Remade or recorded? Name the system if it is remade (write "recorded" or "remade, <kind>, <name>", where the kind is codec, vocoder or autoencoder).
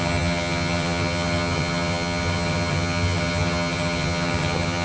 remade, vocoder, HiFi-GAN